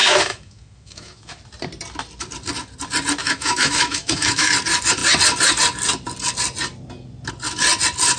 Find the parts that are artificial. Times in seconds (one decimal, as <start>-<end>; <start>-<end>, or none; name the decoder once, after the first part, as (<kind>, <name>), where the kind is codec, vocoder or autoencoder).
0.0-1.4 (autoencoder, DAC-VAE); 3.2-4.5